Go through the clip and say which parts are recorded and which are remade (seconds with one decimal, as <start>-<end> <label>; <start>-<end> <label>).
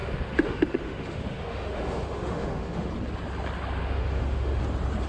0.0-2.9 remade; 2.9-3.8 recorded; 3.8-4.6 remade; 4.6-5.1 recorded